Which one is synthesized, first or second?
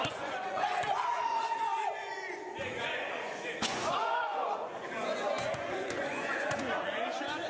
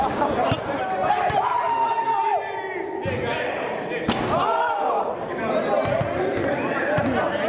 first